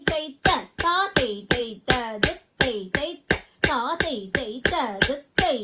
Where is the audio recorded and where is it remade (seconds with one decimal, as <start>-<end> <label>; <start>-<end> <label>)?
0.0-0.8 remade; 0.8-5.6 recorded